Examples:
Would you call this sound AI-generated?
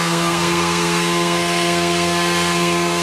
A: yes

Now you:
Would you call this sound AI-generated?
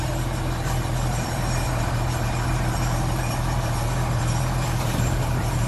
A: yes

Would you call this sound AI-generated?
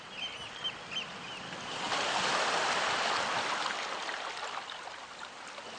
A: no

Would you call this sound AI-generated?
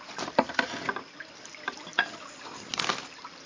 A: no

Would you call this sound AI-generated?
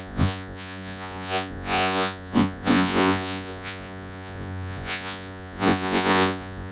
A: yes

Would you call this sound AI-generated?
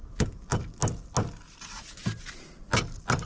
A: no